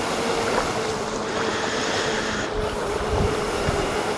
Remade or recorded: recorded